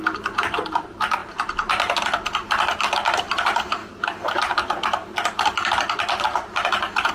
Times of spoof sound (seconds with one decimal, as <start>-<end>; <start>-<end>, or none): 0.0-3.8; 4.4-7.1